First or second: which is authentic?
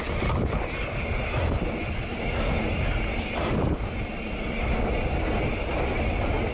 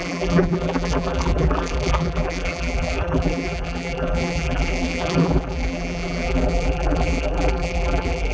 first